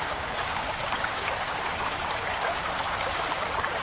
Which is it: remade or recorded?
remade